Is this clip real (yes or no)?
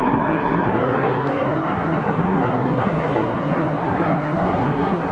no